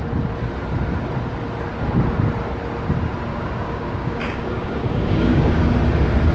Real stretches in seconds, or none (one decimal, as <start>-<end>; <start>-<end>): 0.0-3.3; 5.6-6.3